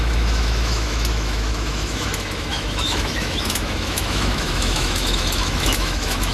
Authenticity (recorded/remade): remade